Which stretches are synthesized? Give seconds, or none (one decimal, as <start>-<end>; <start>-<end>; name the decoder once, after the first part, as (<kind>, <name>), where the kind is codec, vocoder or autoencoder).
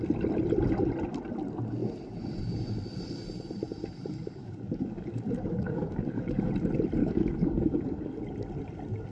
4.4-6.5 (codec, DAC); 7.0-8.2